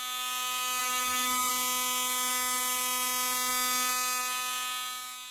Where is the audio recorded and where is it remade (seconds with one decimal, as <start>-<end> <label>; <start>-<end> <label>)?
0.0-0.8 recorded; 0.8-1.5 remade; 1.5-5.3 recorded